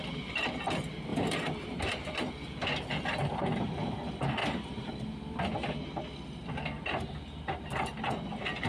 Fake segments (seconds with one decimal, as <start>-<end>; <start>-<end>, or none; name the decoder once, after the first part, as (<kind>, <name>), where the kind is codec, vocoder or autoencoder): 1.1-2.3 (vocoder, BigVGAN v2); 4.4-4.9